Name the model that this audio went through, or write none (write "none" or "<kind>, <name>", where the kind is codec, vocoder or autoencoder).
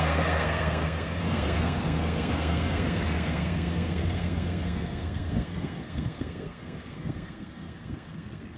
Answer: codec, SNAC